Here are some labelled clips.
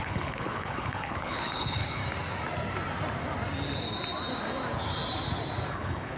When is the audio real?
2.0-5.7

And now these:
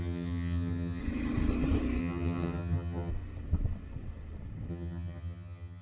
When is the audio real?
1.0-2.0; 3.1-4.7

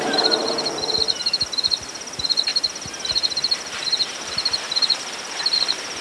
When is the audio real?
0.0-2.5; 5.6-6.0

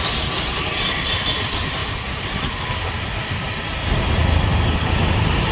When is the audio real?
0.0-5.5